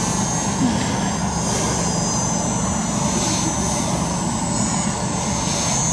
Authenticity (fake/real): real